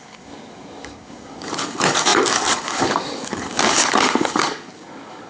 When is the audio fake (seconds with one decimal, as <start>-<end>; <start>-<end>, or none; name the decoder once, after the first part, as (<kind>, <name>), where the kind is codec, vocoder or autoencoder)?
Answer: 0.0-5.3 (codec, DAC)